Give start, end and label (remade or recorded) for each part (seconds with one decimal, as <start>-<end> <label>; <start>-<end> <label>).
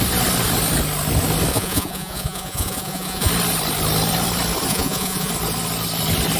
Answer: 0.0-1.5 recorded; 1.5-3.3 remade; 3.3-4.7 recorded; 4.7-5.3 remade; 5.3-6.4 recorded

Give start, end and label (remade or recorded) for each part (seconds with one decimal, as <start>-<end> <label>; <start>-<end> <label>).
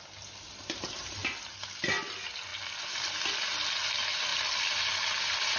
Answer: 0.0-5.6 recorded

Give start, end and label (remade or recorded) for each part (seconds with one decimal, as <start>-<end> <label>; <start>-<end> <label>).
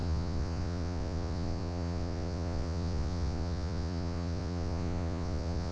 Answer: 0.0-5.7 remade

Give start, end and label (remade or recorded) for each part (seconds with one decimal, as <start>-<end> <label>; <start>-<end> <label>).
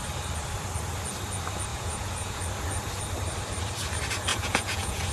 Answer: 0.0-1.7 recorded; 1.7-2.4 remade; 2.4-4.3 recorded; 4.3-5.1 remade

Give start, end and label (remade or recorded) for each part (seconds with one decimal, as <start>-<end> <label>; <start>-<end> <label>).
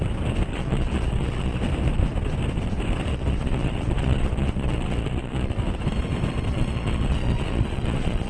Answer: 0.0-0.5 recorded; 0.5-1.6 remade; 1.6-3.1 recorded; 3.1-5.6 remade; 5.6-6.5 recorded; 6.5-8.3 remade